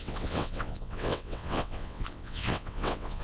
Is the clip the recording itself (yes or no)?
no